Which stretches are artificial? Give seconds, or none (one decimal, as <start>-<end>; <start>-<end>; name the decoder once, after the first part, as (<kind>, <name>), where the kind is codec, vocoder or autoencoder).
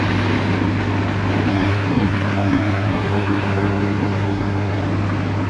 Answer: 1.5-4.8 (codec, SNAC)